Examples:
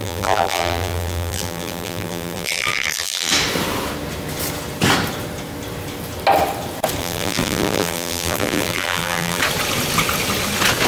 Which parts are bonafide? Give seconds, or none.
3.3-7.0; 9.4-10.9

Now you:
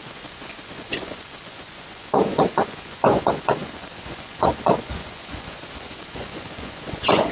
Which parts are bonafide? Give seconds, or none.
none

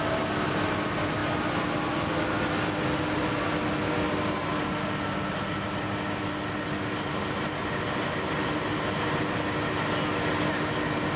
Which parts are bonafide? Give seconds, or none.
0.0-11.2

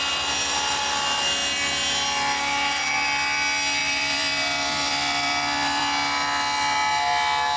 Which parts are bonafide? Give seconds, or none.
0.0-3.8; 5.8-7.6